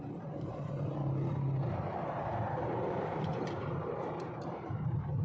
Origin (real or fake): fake